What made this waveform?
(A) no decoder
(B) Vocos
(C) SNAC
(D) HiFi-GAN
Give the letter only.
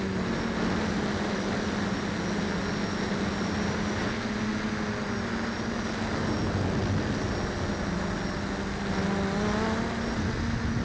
A